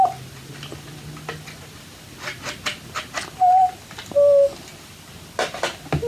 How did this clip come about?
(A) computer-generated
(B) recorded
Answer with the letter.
B